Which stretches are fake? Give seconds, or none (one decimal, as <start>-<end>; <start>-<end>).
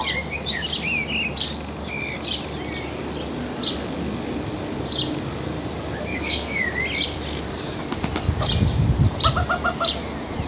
6.1-6.6